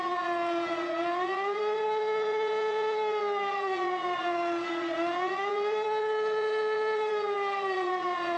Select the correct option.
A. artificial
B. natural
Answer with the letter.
A